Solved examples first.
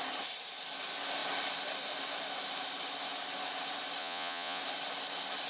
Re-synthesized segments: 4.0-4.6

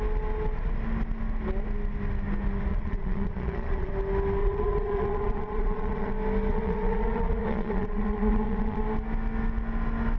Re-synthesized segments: 2.7-3.9; 4.4-6.1; 6.5-8.8

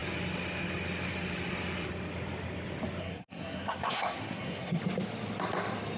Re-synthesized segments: 3.0-4.8